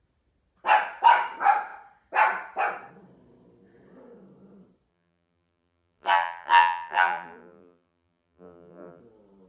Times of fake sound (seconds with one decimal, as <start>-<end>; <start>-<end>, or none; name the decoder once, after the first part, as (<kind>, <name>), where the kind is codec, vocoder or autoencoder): 4.9-9.0 (vocoder, BigVGAN v2)